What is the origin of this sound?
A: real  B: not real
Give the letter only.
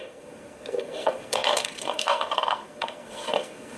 B